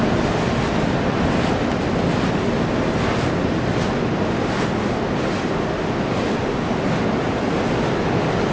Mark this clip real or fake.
real